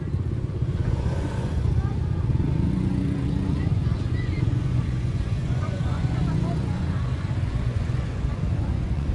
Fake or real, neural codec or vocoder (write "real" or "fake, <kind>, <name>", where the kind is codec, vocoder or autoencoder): fake, vocoder, Vocos